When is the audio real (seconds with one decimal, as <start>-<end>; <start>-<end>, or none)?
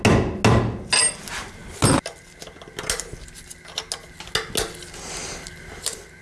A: 0.0-6.2